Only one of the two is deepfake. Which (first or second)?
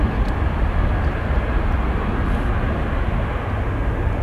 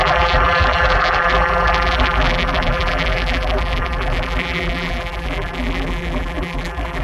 second